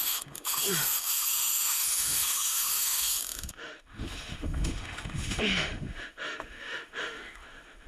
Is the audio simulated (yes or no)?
yes